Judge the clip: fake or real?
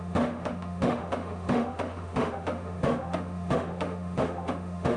fake